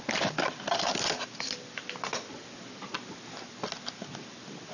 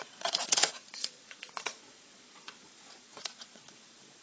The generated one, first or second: second